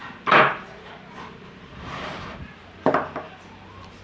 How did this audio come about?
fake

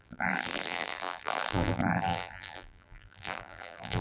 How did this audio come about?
fake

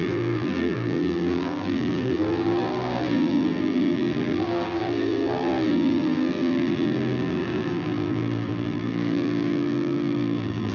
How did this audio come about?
fake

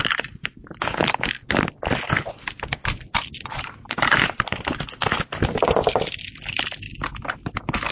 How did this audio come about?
fake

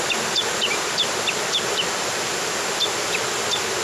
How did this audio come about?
real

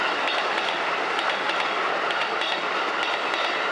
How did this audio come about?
fake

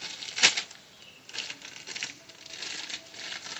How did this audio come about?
real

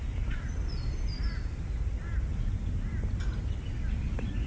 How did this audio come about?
real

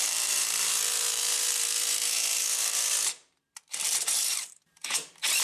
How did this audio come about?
fake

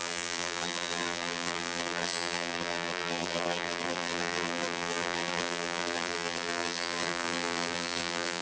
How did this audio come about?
fake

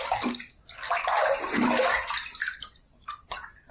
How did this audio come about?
fake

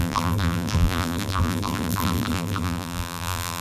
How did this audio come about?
fake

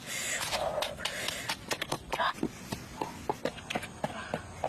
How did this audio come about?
real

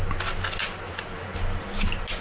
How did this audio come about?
real